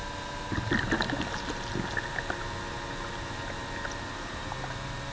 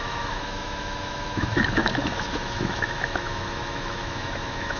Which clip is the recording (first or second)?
first